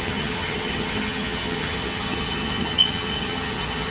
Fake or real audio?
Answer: fake